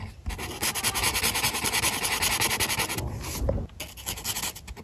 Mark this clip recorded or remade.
recorded